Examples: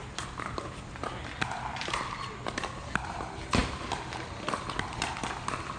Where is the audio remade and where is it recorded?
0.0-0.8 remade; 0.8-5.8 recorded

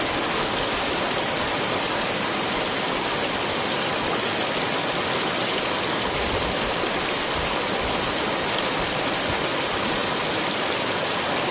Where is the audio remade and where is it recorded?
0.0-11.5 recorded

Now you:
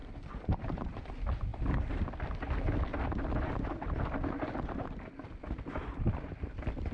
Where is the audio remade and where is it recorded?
0.0-1.1 remade; 1.1-2.9 recorded; 2.9-4.0 remade; 4.0-6.9 recorded

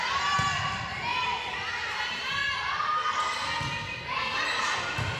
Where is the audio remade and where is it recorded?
0.0-5.2 recorded

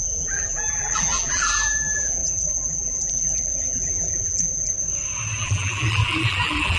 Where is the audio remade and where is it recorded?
0.0-4.7 remade; 4.7-5.4 recorded; 5.4-6.8 remade

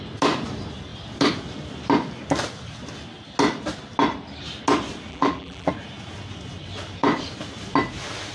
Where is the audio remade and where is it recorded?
0.0-5.1 recorded; 5.1-5.7 remade; 5.7-8.3 recorded

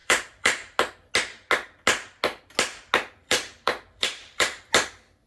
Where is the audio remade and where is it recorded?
0.0-0.8 remade; 0.8-3.2 recorded; 3.2-4.6 remade; 4.6-5.3 recorded

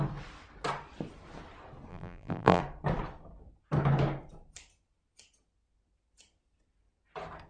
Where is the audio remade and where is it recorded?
0.0-1.9 recorded; 1.9-2.6 remade; 2.6-7.5 recorded